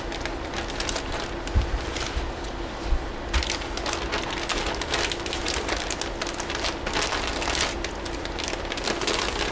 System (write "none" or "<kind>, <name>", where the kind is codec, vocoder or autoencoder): none